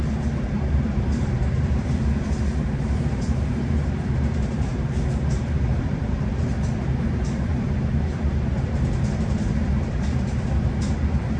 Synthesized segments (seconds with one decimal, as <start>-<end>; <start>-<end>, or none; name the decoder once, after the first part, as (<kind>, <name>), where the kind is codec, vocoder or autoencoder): 0.0-6.5 (vocoder, BigVGAN v2); 7.0-11.4